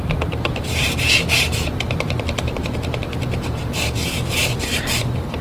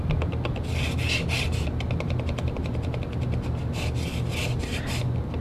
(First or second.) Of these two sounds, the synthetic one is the first